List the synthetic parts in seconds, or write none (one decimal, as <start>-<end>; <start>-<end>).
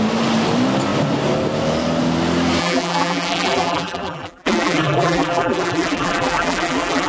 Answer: 2.6-7.1